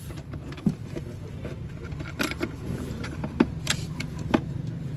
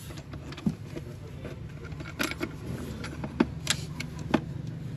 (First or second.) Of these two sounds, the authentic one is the second